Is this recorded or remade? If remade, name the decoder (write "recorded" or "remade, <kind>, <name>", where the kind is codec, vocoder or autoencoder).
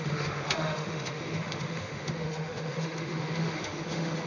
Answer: remade, autoencoder, DAC-VAE